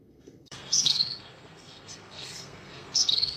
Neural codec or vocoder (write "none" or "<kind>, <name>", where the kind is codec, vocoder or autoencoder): codec, SNAC